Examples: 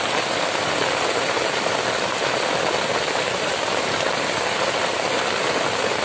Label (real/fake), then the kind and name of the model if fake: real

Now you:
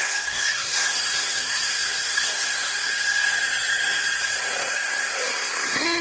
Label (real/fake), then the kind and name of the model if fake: fake, codec, SNAC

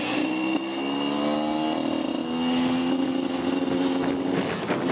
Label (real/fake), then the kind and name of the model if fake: real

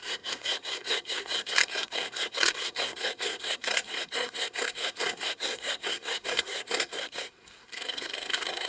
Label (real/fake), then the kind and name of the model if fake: fake, codec, SNAC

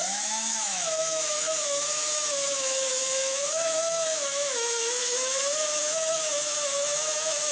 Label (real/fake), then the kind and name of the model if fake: fake, autoencoder, DAC-VAE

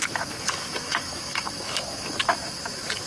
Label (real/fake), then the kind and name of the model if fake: fake, autoencoder, DAC-VAE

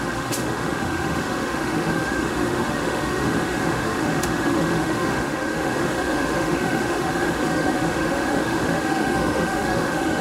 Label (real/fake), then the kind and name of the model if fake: fake, autoencoder, DAC-VAE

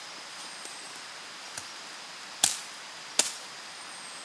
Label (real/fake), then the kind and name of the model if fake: real